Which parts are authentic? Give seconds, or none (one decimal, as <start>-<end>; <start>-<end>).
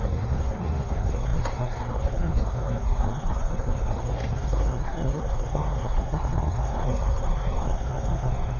none